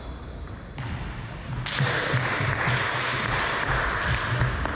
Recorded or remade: recorded